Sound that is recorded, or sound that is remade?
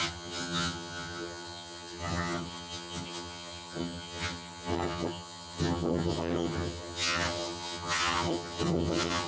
remade